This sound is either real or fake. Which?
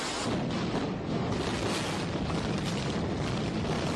real